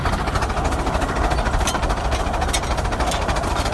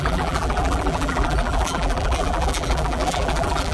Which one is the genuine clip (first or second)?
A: first